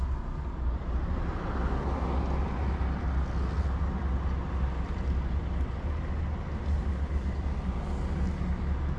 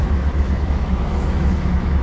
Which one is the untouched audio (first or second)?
first